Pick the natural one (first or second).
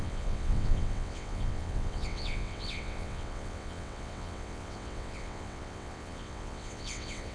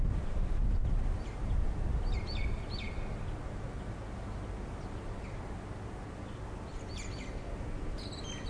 second